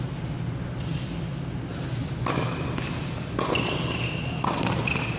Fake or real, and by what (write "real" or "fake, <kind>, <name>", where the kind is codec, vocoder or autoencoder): real